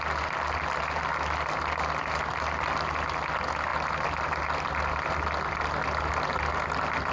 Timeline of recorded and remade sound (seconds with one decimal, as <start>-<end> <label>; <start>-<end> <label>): 0.0-7.1 recorded